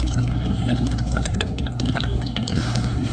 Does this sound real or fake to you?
fake